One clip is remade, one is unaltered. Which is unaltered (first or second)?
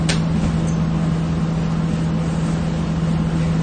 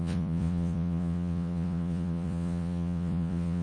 first